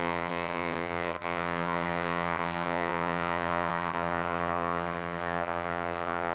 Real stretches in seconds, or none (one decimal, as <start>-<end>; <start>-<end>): none

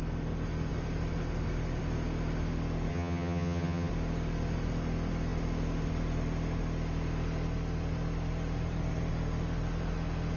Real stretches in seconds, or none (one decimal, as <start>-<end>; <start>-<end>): 0.0-2.9; 3.9-10.4

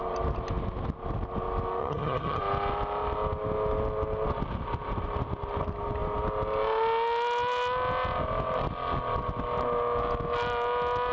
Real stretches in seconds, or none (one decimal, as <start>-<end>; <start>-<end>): 0.0-1.8; 2.4-11.1